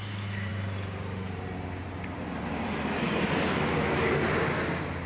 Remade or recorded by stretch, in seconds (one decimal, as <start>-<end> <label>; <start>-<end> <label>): 0.0-0.5 recorded; 0.5-3.6 remade; 3.6-5.1 recorded